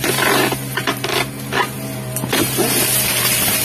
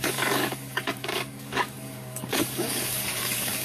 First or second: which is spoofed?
second